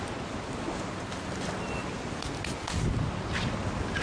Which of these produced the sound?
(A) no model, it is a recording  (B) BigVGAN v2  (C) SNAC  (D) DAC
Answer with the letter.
A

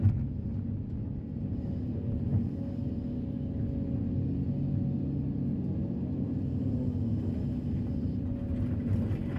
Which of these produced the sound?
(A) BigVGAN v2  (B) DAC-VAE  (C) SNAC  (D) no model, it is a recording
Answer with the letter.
D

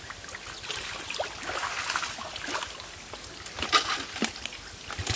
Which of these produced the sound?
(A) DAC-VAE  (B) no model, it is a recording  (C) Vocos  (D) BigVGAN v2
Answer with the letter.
B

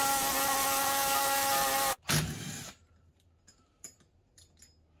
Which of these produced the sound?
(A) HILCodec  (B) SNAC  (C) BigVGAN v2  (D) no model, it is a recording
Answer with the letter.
D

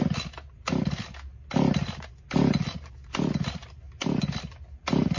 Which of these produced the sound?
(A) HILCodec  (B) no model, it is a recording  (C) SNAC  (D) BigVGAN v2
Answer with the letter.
B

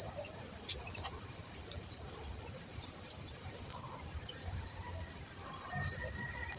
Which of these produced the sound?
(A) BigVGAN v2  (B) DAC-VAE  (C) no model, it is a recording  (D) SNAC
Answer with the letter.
A